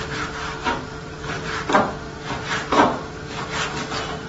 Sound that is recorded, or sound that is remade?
recorded